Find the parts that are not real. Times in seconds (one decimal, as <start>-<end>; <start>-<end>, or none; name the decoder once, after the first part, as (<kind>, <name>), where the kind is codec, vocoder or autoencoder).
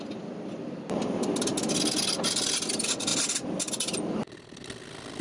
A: none